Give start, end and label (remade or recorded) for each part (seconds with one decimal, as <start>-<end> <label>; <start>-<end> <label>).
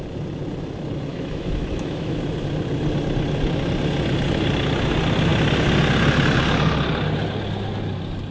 0.0-1.1 recorded; 1.1-2.2 remade; 2.2-8.3 recorded